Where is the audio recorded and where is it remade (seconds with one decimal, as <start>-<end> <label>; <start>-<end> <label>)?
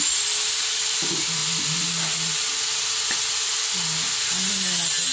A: 0.0-5.1 recorded